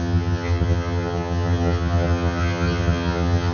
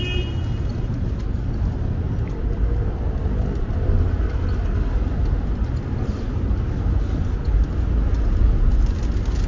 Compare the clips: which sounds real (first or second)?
second